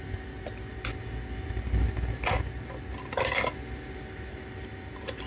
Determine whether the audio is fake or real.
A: real